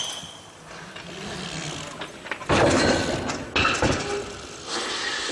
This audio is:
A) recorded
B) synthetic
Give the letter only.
A